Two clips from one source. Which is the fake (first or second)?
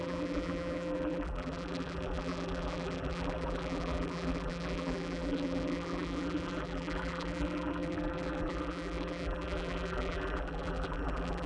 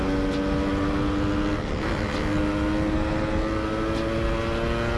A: first